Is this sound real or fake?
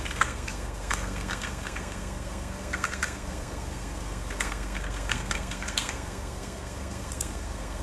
fake